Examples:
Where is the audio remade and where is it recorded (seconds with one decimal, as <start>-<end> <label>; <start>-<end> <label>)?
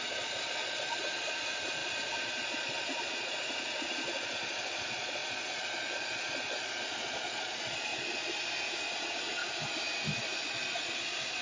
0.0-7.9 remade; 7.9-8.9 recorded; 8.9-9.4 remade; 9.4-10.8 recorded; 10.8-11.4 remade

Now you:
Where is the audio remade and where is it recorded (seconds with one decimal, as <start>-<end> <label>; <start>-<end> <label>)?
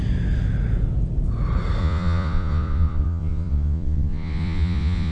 0.0-1.8 recorded; 1.8-5.1 remade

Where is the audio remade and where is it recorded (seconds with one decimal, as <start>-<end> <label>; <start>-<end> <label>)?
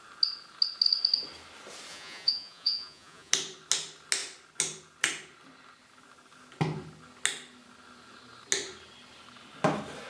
0.0-1.9 recorded; 1.9-3.3 remade; 3.3-10.1 recorded